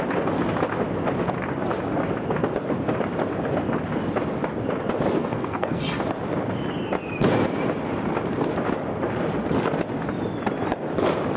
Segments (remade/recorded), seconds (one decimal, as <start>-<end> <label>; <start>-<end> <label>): 0.0-5.2 recorded; 5.2-5.8 remade; 5.8-11.4 recorded